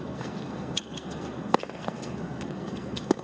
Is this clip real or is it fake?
fake